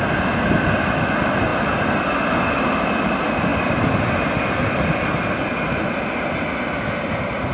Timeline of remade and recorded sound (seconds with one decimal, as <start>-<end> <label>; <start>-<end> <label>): 0.0-7.5 recorded